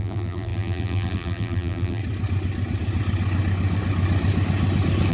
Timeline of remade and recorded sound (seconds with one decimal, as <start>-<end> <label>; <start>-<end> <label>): 0.0-2.0 remade; 2.0-5.1 recorded